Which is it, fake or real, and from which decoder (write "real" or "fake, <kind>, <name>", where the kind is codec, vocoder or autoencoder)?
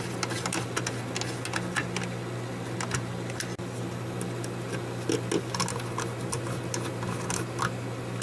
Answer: real